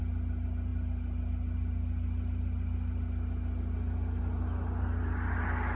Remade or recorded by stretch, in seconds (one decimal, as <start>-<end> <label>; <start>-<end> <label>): 0.0-5.8 recorded